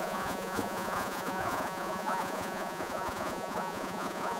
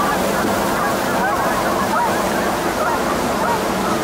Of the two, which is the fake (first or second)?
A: first